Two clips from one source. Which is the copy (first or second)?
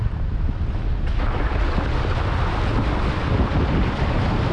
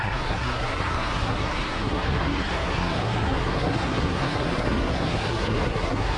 second